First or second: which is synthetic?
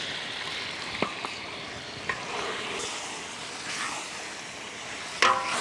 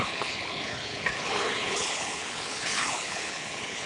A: second